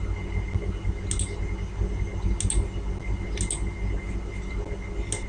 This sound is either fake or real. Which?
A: real